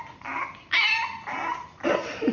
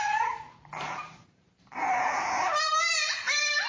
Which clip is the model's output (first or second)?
second